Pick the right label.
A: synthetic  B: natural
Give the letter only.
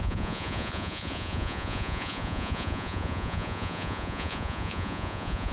A